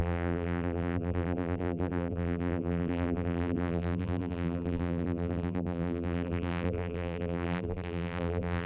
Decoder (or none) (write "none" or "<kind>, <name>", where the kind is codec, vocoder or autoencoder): vocoder, BigVGAN v2